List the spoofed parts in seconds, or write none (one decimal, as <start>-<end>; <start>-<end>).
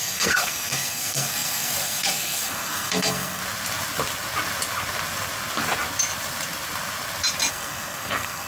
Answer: 0.0-3.4; 7.5-8.5